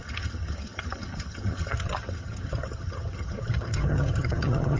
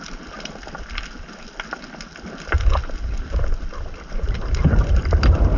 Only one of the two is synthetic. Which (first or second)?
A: first